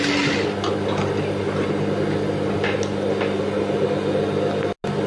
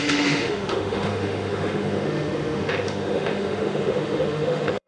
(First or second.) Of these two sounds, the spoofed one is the second